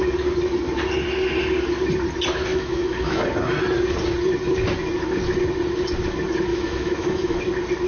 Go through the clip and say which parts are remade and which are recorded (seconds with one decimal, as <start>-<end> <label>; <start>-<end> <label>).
0.0-2.5 recorded; 2.5-3.2 remade; 3.2-6.5 recorded; 6.5-7.4 remade; 7.4-7.9 recorded